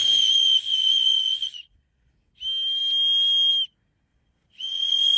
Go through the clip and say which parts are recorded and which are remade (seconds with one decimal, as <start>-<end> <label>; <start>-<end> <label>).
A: 0.0-2.1 remade; 2.1-4.1 recorded; 4.1-5.2 remade